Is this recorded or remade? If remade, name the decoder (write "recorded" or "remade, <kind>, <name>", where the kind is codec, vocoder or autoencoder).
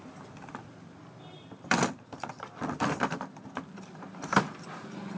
remade, vocoder, BigVGAN v2